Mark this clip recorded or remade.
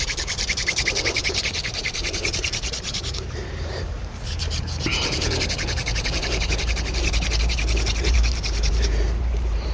remade